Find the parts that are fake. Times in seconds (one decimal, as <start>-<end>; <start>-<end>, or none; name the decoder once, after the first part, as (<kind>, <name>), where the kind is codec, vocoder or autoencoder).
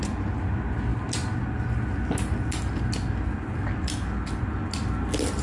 none